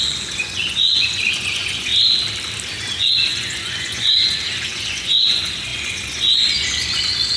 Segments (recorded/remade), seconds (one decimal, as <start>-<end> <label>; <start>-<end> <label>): 0.0-1.9 remade; 1.9-2.7 recorded; 2.7-7.4 remade

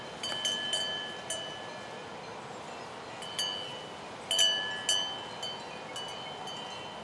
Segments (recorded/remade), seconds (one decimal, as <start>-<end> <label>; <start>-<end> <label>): 0.0-7.0 recorded

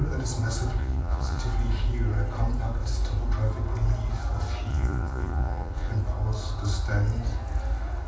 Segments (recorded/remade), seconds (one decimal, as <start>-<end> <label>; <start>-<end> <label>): 0.0-0.8 recorded; 0.8-1.4 remade; 1.4-4.7 recorded; 4.7-5.9 remade; 5.9-8.1 recorded